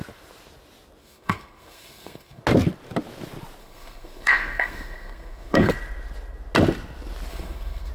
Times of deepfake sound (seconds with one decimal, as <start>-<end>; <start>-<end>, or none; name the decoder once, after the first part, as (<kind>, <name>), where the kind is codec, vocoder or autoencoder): 1.0-2.4 (codec, SNAC); 3.6-5.7; 7.3-7.9